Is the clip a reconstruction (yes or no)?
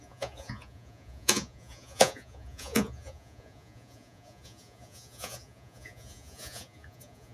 yes